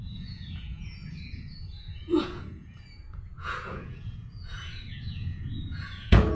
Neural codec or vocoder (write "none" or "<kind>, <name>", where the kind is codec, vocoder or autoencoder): vocoder, Vocos